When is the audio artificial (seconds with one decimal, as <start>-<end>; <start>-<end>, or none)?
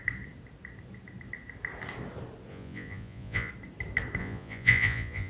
2.5-3.5; 4.2-5.3